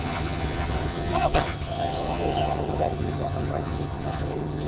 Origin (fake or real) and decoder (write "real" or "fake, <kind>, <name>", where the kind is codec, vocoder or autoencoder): fake, vocoder, HiFi-GAN